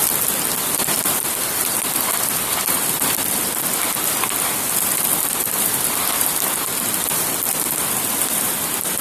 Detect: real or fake fake